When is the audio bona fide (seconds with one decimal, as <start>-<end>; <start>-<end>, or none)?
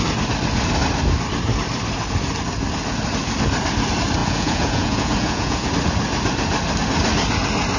0.0-4.2; 5.7-7.8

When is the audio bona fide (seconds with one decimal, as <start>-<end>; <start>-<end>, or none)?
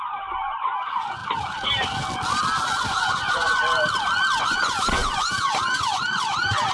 1.2-2.8; 3.6-4.4